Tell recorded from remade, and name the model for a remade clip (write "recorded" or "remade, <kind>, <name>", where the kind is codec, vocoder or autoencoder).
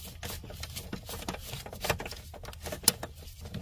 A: recorded